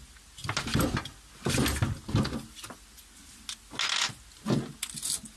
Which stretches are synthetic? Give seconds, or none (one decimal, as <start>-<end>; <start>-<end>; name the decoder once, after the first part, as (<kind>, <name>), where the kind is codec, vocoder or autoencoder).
none